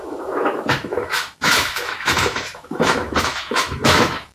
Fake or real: fake